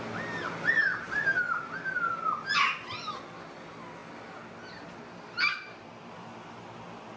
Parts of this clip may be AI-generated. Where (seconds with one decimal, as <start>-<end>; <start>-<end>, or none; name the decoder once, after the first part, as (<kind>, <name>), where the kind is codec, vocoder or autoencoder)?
0.9-1.4 (vocoder, BigVGAN v2); 5.5-6.1